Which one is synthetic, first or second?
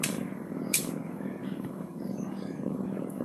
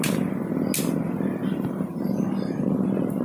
first